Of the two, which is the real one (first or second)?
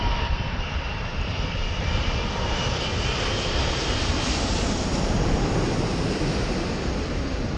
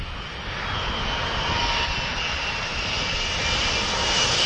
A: second